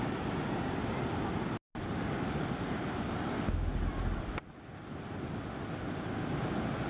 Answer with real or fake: real